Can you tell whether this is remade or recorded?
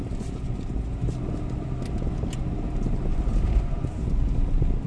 recorded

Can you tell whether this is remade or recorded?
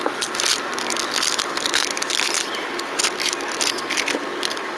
recorded